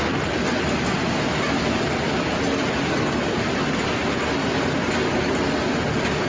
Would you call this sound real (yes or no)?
yes